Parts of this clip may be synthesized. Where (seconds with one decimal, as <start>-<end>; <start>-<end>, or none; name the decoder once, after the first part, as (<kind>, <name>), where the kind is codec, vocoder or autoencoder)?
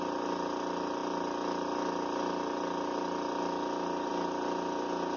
none